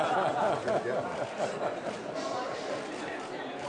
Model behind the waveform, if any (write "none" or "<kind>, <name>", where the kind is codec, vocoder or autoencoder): none